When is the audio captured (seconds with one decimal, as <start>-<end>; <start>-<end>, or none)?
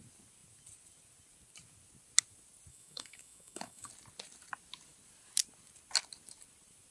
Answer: 0.0-2.7; 3.9-6.9